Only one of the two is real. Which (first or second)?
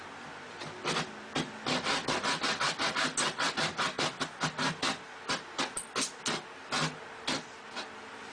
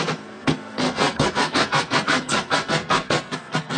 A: first